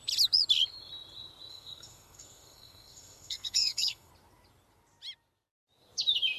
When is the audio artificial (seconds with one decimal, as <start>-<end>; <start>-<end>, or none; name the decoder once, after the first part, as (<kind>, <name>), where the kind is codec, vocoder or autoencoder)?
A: 1.5-4.1 (codec, SNAC)